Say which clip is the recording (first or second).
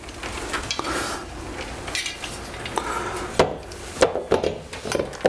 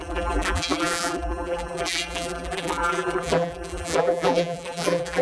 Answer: first